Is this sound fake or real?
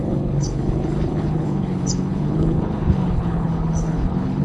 fake